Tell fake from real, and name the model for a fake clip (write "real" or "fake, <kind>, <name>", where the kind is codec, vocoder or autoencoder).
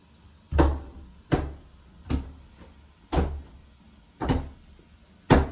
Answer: real